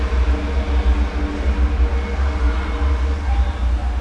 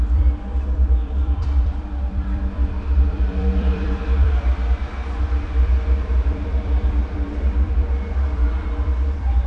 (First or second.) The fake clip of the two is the second